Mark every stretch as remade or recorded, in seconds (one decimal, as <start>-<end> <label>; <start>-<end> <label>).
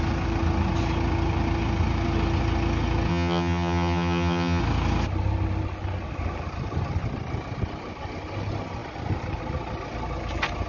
0.0-3.1 recorded; 3.1-4.6 remade; 4.6-10.7 recorded